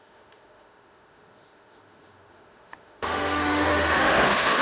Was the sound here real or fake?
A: fake